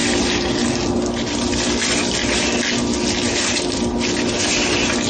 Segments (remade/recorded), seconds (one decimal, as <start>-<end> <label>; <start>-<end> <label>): 0.0-5.1 recorded